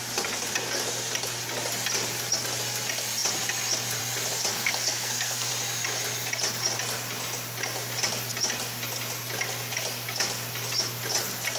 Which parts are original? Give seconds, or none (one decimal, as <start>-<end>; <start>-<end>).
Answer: 0.0-4.5; 5.5-11.6